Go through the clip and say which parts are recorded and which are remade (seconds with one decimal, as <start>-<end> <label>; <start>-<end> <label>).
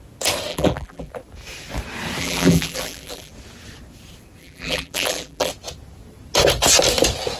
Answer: 0.0-0.5 recorded; 0.5-1.1 remade; 1.1-2.2 recorded; 2.2-3.3 remade; 3.3-4.4 recorded; 4.4-5.5 remade; 5.5-7.4 recorded